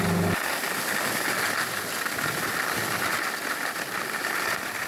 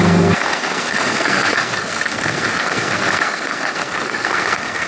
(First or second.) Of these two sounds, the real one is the first